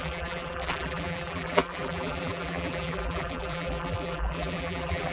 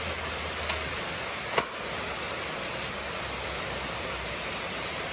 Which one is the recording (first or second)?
second